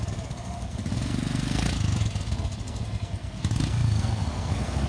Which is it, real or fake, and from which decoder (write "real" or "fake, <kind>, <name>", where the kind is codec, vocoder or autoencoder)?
fake, codec, SNAC